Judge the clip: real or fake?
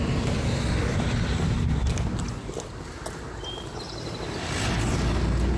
real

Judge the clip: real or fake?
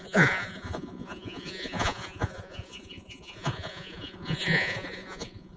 fake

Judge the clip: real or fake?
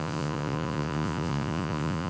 fake